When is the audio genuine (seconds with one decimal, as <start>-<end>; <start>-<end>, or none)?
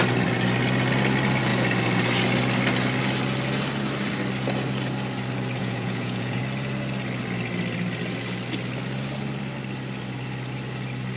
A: 0.0-5.6; 6.4-11.2